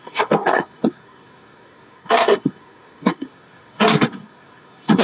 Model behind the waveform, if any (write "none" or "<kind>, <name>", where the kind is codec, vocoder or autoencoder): codec, SNAC